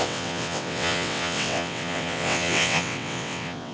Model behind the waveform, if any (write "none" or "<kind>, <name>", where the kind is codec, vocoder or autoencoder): vocoder, WaveNeXt